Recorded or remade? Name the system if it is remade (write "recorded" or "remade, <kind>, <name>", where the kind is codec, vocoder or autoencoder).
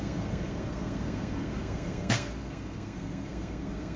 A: remade, codec, SNAC